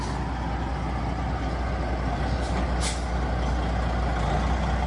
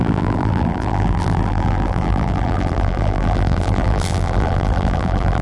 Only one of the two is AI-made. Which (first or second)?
second